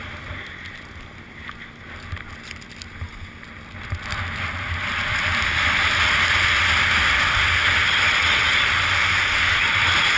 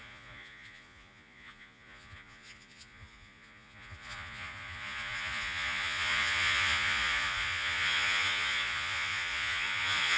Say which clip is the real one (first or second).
first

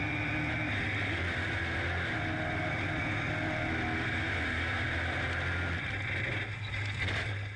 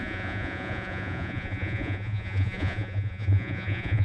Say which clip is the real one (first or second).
first